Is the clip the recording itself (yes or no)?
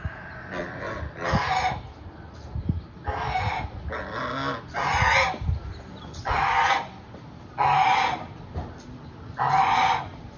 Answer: yes